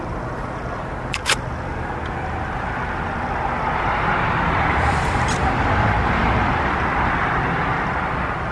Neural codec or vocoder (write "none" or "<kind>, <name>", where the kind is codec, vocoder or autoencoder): vocoder, BigVGAN v2